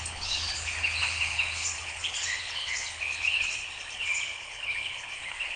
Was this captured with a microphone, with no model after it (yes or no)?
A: no